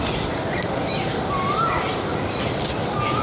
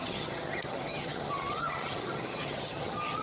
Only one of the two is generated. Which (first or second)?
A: second